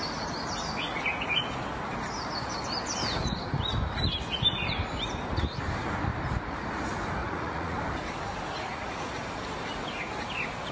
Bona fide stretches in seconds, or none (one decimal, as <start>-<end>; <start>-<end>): 0.0-7.2; 7.8-8.7; 9.2-10.7